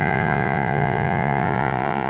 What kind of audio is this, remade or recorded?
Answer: remade